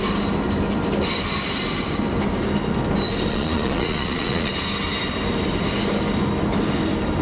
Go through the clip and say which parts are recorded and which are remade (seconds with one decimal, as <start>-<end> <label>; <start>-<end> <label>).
0.0-3.3 recorded; 3.3-4.5 remade; 4.5-7.2 recorded